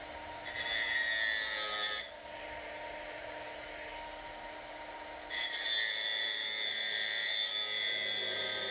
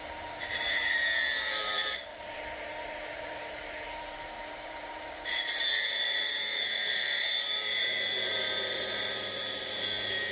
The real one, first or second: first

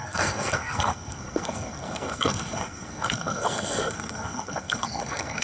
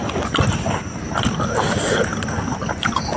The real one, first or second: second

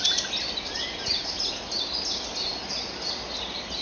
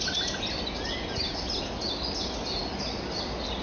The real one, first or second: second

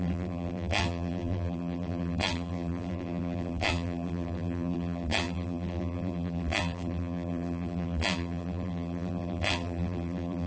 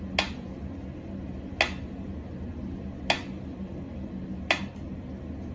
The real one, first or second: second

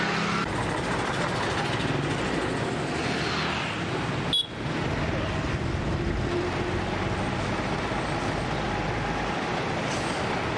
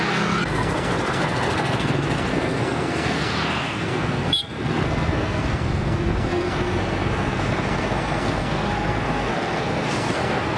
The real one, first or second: first